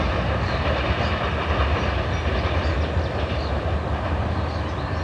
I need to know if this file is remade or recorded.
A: recorded